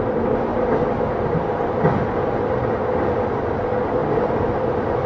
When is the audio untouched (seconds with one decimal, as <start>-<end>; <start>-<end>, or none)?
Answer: 0.0-5.1